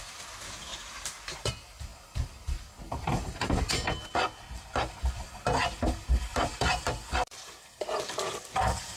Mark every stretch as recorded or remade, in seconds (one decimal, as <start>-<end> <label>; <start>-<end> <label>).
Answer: 0.0-0.7 recorded; 0.7-1.5 remade; 1.5-6.3 recorded; 6.3-6.9 remade; 6.9-9.0 recorded